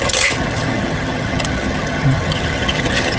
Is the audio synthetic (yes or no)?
yes